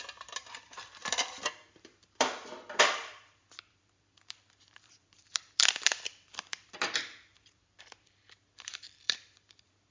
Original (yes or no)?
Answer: no